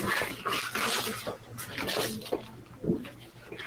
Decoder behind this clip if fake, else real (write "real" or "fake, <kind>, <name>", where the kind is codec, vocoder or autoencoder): real